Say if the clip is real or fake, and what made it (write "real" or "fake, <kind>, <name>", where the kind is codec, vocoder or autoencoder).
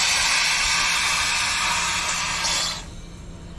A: real